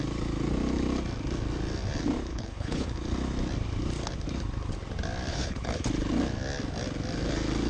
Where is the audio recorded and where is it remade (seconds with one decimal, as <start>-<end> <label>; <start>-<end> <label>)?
0.0-2.3 recorded; 2.3-2.9 remade; 2.9-5.3 recorded; 5.3-5.8 remade; 5.8-7.7 recorded